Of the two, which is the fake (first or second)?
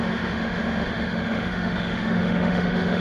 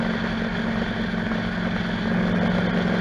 first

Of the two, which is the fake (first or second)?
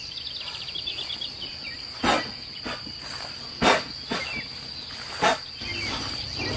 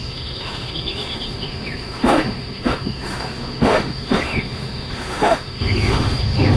second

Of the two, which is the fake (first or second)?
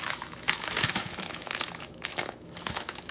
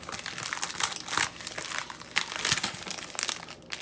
first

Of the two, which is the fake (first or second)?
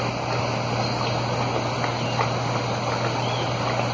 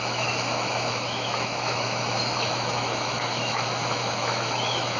second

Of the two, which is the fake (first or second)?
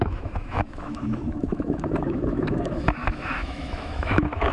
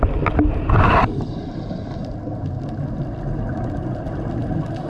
first